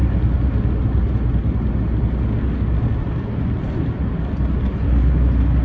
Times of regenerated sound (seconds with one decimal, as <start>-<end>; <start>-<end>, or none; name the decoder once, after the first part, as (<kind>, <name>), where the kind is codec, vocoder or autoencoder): none